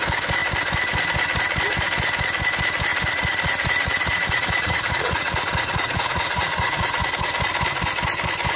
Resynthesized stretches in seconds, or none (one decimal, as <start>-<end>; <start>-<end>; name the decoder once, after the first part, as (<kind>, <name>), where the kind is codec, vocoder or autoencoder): 2.9-7.1 (vocoder, Vocos)